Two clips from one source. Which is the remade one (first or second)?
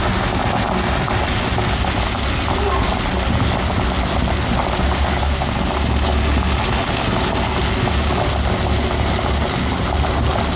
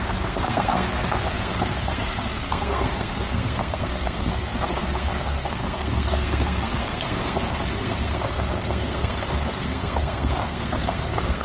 second